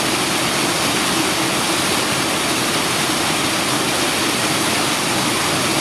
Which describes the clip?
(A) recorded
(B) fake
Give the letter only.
A